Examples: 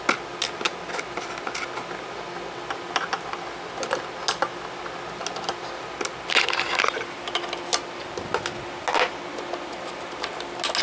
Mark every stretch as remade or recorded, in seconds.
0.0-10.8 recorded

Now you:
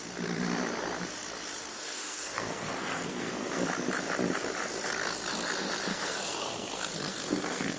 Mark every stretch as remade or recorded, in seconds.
0.0-1.7 recorded; 1.7-3.6 remade; 3.6-5.9 recorded; 5.9-7.8 remade

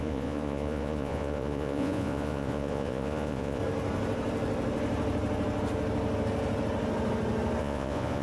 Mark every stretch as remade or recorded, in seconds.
0.0-3.6 remade; 3.6-7.6 recorded; 7.6-8.2 remade

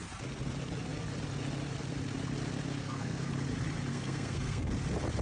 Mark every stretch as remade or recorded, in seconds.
0.0-2.8 recorded; 2.8-3.3 remade; 3.3-3.9 recorded; 3.9-4.7 remade; 4.7-5.2 recorded

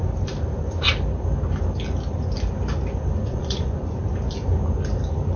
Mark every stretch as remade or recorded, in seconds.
0.0-3.2 recorded; 3.2-4.0 remade; 4.0-5.4 recorded